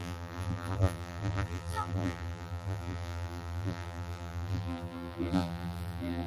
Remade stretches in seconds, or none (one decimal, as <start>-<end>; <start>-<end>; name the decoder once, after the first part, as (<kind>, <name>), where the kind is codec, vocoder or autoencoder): 0.0-6.3 (vocoder, BigVGAN v2)